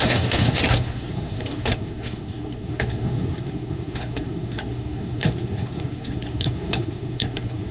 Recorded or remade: remade